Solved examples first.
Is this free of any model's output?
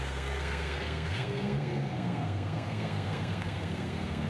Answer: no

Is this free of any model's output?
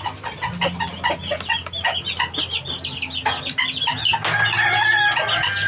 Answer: yes